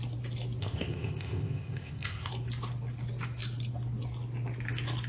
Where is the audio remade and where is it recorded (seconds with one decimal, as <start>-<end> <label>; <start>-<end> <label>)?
0.0-0.6 recorded; 0.6-2.3 remade; 2.3-5.1 recorded